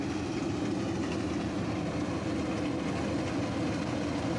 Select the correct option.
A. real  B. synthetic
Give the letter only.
A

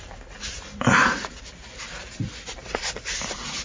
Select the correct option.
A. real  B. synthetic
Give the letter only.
A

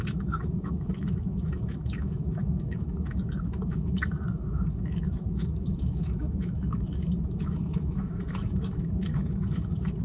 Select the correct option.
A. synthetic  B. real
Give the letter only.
A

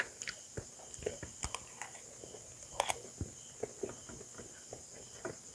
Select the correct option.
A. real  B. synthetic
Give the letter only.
A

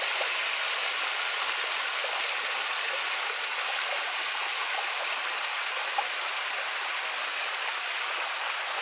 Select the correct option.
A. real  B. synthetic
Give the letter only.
A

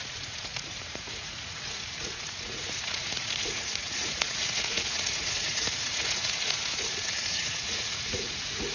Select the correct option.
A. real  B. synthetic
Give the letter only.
B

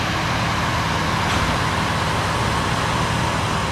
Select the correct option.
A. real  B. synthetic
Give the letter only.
A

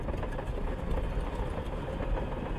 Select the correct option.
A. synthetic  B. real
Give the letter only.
B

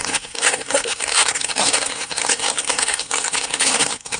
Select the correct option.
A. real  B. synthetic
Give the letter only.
B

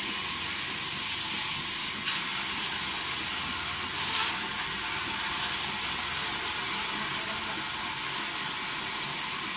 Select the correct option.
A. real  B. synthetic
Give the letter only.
A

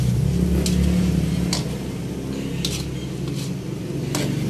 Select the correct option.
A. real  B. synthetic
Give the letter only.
A